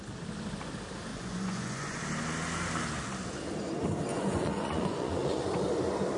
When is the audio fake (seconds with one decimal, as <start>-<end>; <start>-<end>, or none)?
1.1-2.0; 4.1-5.6